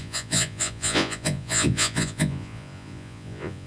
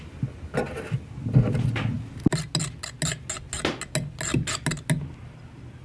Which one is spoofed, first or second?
first